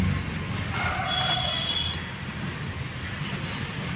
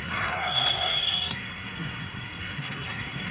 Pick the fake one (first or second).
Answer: second